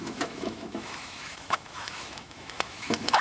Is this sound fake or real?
fake